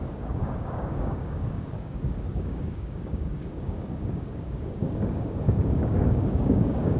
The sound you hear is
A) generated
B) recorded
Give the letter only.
A